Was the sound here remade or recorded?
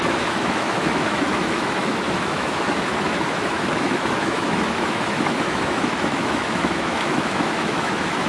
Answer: remade